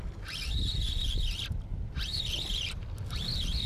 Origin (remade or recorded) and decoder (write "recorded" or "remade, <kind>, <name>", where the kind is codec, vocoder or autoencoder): recorded